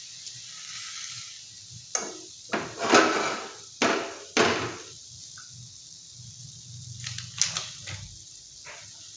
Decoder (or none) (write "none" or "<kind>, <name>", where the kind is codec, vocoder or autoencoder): none